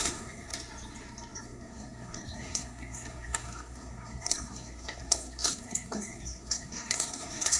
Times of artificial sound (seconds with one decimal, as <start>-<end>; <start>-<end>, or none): 0.0-0.5; 1.4-7.6